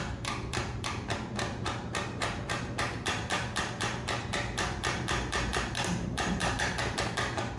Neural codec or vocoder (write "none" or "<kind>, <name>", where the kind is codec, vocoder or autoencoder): vocoder, BigVGAN v2